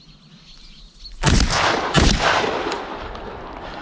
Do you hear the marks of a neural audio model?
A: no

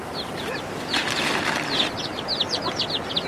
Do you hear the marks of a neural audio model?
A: no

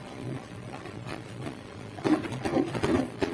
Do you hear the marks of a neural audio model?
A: yes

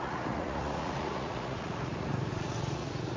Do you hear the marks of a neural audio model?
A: yes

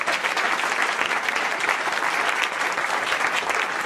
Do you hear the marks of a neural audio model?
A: no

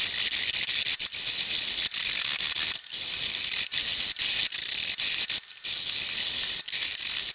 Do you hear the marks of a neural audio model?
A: no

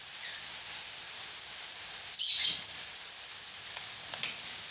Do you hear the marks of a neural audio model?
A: no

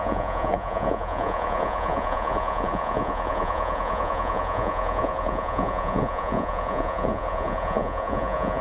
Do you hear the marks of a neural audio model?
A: yes